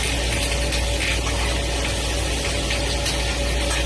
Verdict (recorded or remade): recorded